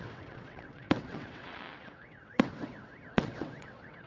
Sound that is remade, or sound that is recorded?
remade